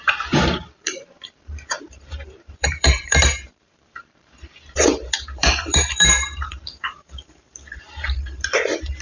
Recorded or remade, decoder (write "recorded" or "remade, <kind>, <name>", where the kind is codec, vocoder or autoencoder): remade, vocoder, BigVGAN v2